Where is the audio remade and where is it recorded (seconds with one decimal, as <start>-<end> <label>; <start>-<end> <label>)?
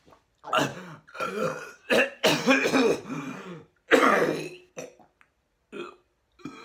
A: 0.0-6.6 recorded